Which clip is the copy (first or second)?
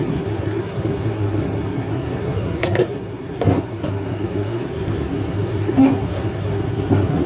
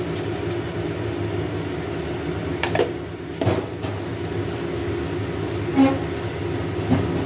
first